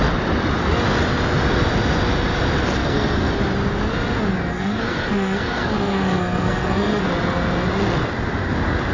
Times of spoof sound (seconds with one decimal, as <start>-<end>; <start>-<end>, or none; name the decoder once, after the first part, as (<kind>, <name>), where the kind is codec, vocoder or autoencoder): 2.8-3.3 (codec, SNAC); 4.5-7.0